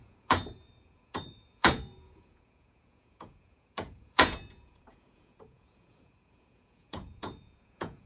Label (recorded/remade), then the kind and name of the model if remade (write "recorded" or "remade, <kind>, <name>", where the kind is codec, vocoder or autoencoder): remade, vocoder, Vocos